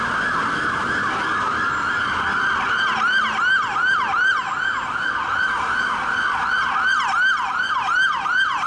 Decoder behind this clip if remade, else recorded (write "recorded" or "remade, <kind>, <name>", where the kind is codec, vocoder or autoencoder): recorded